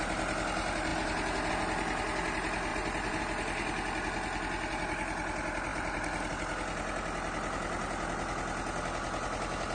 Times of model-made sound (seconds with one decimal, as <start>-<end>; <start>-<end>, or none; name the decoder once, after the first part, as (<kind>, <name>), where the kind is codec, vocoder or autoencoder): 2.7-3.2 (vocoder, BigVGAN v2)